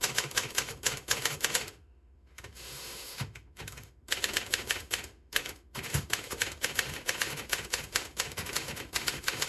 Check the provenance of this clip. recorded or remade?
remade